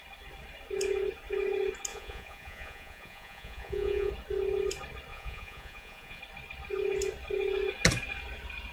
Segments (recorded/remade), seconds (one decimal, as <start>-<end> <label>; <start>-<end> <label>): 0.0-1.9 recorded; 1.9-4.1 remade; 4.1-5.1 recorded; 5.1-6.2 remade; 6.2-8.7 recorded